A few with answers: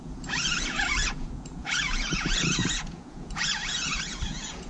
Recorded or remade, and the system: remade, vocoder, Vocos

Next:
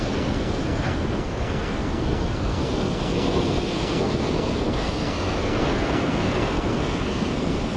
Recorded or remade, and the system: remade, codec, SNAC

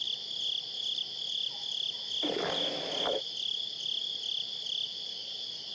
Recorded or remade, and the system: recorded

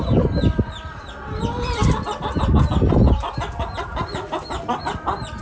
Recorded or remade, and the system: recorded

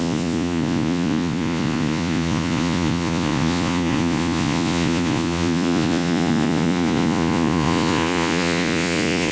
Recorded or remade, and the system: remade, vocoder, Vocos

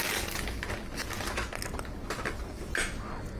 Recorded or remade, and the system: recorded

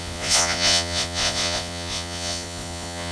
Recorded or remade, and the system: remade, vocoder, Vocos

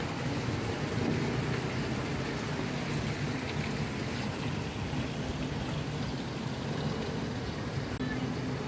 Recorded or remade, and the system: recorded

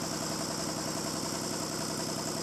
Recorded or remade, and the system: recorded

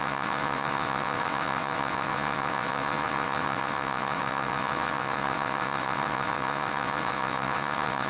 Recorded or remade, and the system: remade, vocoder, WaveNeXt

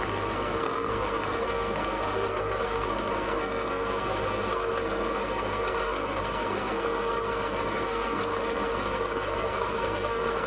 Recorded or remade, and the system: remade, codec, SNAC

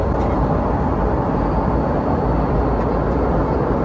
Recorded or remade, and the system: recorded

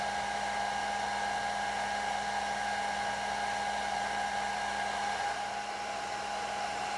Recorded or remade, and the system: recorded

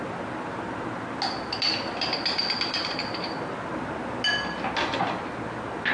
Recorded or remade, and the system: recorded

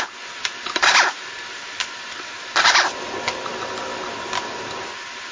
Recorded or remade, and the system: recorded